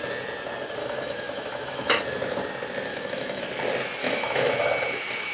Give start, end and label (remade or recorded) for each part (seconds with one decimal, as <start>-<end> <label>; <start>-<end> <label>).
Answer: 0.0-0.8 recorded; 0.8-2.0 remade; 2.0-2.9 recorded; 2.9-3.4 remade; 3.4-4.0 recorded; 4.0-5.3 remade